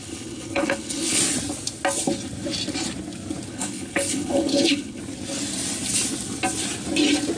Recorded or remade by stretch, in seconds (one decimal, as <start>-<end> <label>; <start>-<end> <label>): 0.0-1.2 remade; 1.2-3.5 recorded; 3.5-5.0 remade; 5.0-7.4 recorded